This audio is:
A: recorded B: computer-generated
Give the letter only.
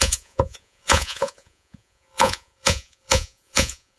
B